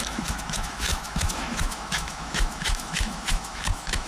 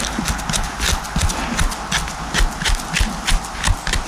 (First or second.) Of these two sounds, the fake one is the first